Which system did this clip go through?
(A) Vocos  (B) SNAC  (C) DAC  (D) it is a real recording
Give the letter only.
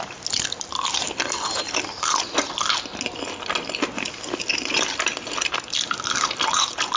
D